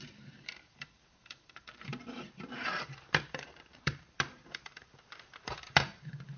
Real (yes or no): no